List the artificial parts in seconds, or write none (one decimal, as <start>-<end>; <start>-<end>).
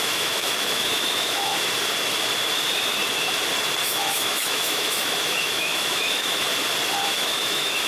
0.0-1.5; 3.8-6.5; 7.1-7.9